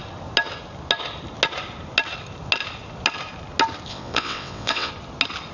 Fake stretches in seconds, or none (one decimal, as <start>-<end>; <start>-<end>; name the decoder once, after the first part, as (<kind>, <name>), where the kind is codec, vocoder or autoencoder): 3.9-4.9 (vocoder, WaveNeXt)